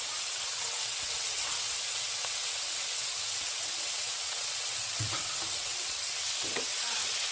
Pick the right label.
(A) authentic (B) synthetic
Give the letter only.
B